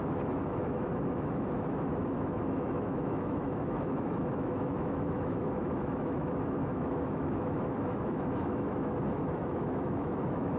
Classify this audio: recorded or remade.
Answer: remade